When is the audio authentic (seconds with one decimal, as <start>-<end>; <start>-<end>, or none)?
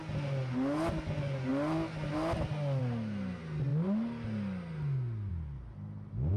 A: 0.0-6.4